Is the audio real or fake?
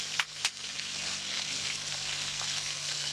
fake